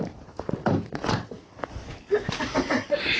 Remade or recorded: recorded